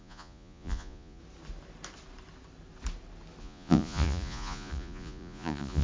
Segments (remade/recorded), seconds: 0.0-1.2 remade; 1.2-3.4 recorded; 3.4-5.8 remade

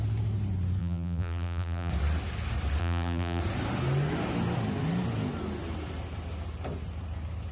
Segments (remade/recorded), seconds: 0.0-0.8 recorded; 0.8-1.9 remade; 1.9-2.8 recorded; 2.8-3.4 remade; 3.4-7.5 recorded

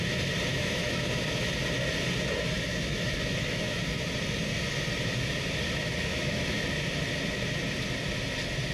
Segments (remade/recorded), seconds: 0.0-0.5 recorded; 0.5-1.2 remade; 1.2-2.7 recorded; 2.7-4.0 remade; 4.0-6.1 recorded; 6.1-6.6 remade; 6.6-8.7 recorded

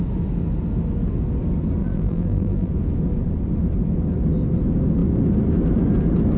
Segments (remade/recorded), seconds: 0.0-1.8 recorded; 1.8-2.7 remade; 2.7-6.4 recorded

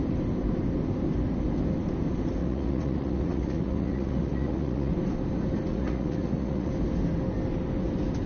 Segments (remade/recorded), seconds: 0.0-2.4 recorded; 2.4-4.9 remade; 4.9-5.7 recorded; 5.7-6.7 remade; 6.7-8.3 recorded

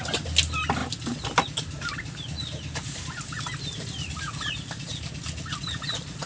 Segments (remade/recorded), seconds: 0.0-6.3 recorded

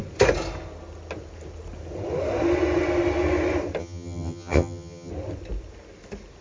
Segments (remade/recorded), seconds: 0.0-3.8 recorded; 3.8-5.1 remade; 5.1-6.4 recorded

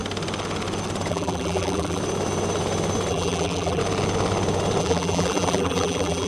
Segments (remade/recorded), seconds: 0.0-1.1 recorded; 1.1-2.0 remade; 2.0-3.1 recorded; 3.1-3.8 remade; 3.8-4.8 recorded; 4.8-6.3 remade